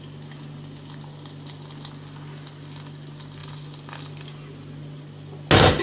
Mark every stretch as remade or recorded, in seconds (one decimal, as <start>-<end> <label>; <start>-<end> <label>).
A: 0.0-5.8 recorded

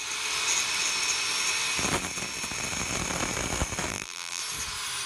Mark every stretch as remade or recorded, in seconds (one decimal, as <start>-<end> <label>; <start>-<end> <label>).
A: 0.0-3.9 recorded; 3.9-4.4 remade; 4.4-5.1 recorded

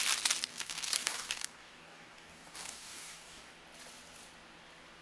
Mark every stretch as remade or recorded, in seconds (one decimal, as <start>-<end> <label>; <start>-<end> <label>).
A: 0.0-0.5 recorded; 0.5-3.5 remade; 3.5-5.0 recorded